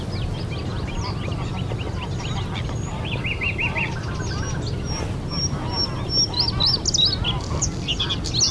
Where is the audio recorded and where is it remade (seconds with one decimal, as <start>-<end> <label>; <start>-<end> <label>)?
0.0-8.5 recorded